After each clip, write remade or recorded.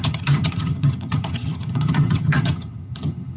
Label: remade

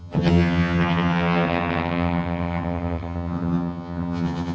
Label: remade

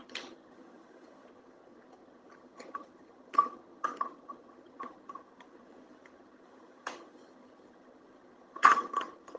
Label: remade